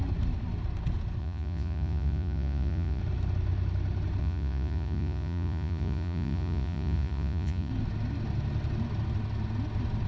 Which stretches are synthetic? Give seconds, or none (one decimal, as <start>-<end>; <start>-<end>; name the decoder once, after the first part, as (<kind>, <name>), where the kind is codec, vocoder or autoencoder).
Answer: 1.2-3.0 (vocoder, Vocos); 4.2-7.7